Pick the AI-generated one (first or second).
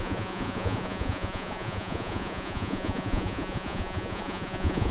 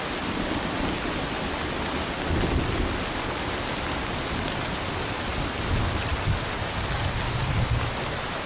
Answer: first